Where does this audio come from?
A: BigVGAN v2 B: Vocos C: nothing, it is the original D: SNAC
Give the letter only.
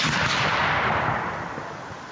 C